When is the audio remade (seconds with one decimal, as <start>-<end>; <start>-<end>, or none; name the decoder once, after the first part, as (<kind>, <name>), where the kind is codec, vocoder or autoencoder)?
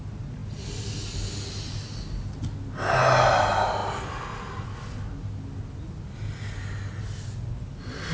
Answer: none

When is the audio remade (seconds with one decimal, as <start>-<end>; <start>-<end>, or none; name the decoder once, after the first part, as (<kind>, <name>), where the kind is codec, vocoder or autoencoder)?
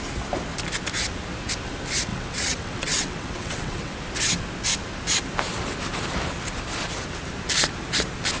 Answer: 2.1-3.9 (vocoder, WaveNeXt)